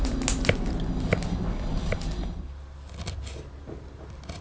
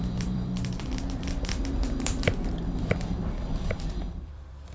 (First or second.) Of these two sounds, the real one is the first